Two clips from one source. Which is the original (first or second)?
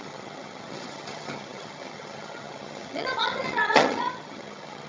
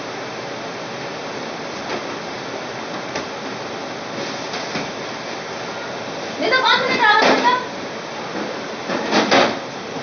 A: second